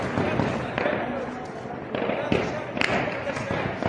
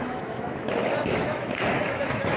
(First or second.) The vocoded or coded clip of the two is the second